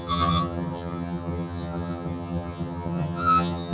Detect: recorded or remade remade